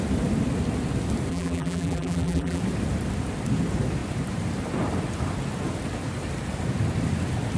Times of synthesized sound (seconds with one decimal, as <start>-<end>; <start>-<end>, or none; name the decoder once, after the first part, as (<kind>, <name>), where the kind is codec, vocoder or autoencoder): 1.3-2.6 (vocoder, BigVGAN v2)